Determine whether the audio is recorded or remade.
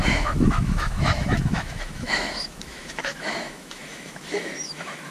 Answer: remade